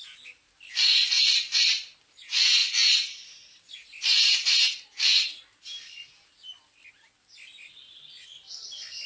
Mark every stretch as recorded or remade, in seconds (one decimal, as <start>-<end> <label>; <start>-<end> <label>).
0.0-9.1 recorded